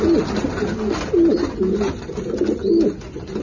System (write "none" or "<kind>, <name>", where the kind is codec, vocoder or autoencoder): none